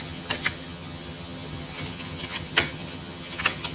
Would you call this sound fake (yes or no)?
yes